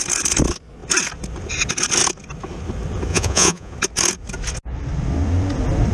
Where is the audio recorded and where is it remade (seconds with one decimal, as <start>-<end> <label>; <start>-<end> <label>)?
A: 0.0-3.1 recorded; 3.1-3.7 remade; 3.7-5.9 recorded